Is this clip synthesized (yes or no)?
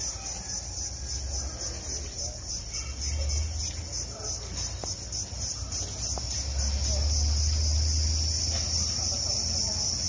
no